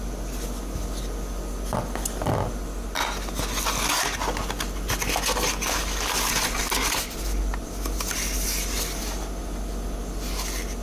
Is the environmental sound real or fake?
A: real